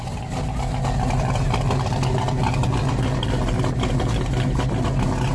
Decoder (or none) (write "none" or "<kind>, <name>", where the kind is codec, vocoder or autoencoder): none